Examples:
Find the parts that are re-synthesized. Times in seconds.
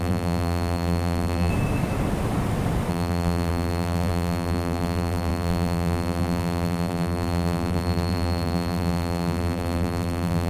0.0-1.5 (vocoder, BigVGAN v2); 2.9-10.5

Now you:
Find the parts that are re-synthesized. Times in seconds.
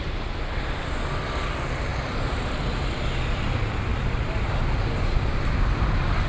none